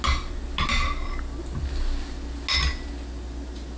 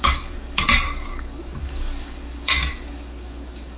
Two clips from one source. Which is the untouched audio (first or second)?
first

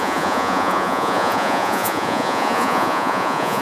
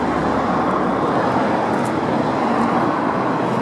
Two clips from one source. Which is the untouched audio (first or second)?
second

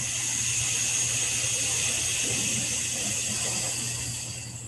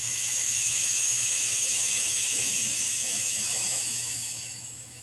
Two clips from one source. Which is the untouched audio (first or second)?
first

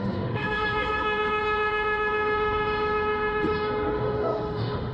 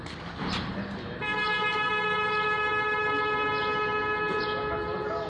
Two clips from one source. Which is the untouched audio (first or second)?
second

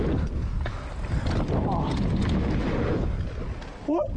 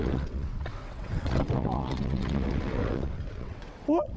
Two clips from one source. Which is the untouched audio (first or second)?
first